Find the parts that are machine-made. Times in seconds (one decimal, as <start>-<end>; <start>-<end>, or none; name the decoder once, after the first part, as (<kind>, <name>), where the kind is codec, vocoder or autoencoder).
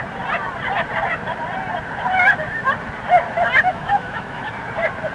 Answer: 3.7-4.5 (autoencoder, DAC-VAE)